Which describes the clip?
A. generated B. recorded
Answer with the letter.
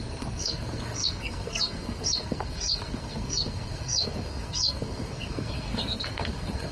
A